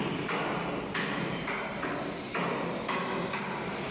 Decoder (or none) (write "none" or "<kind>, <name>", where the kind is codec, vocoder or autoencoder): none